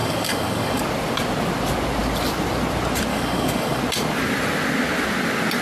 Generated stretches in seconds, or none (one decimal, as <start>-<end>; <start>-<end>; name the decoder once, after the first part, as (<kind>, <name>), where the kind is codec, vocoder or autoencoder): 0.0-0.8 (codec, DAC); 3.1-3.8